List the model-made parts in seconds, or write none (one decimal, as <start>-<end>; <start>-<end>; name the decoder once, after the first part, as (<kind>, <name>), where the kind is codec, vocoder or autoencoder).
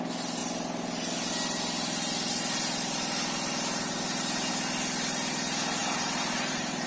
5.8-6.9 (vocoder, BigVGAN v2)